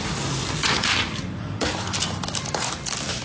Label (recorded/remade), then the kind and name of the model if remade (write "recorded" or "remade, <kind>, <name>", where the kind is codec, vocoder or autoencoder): recorded